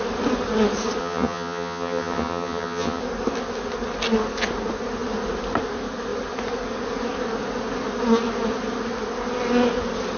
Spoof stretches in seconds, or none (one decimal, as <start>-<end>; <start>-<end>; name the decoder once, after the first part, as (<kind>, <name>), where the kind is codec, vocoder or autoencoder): 1.0-3.0 (vocoder, HiFi-GAN)